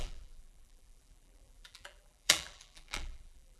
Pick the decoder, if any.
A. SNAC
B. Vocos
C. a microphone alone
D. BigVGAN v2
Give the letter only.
D